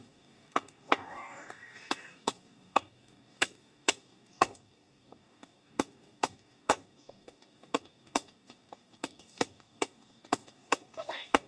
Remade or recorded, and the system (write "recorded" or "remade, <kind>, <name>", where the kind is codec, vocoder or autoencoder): remade, codec, DAC